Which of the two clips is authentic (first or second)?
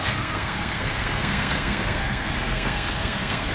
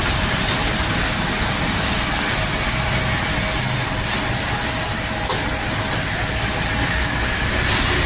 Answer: second